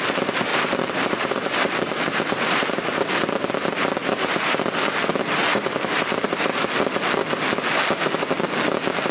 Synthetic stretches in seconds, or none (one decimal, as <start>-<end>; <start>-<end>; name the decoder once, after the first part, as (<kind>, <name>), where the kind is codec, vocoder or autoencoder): 0.5-3.1 (vocoder, BigVGAN v2); 5.5-6.4